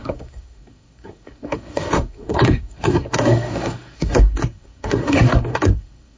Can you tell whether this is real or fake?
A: fake